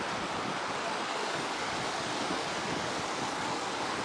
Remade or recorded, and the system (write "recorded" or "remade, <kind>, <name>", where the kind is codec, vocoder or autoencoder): remade, codec, DAC